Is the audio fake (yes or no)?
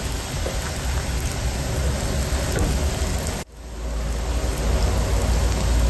no